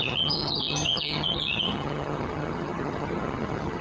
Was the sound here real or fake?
fake